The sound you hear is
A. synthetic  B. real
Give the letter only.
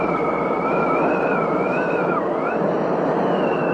B